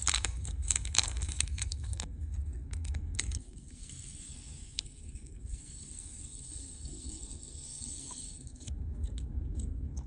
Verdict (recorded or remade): remade